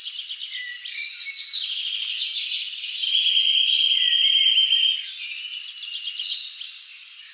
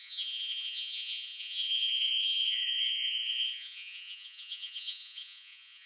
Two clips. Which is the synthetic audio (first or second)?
second